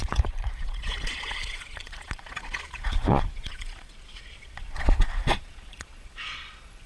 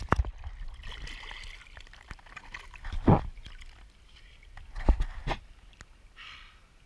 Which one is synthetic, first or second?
first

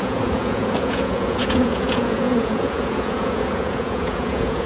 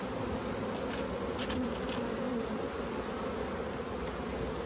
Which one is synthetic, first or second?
first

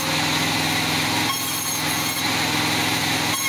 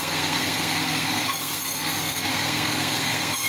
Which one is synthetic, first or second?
second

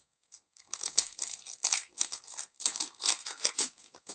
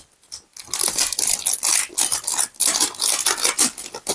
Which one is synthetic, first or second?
first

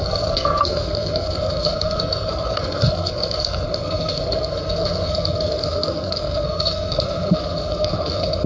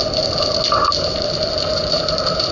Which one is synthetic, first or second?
first